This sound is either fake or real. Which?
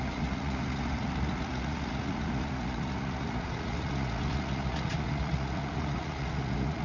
fake